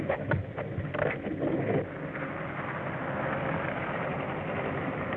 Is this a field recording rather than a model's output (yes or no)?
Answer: yes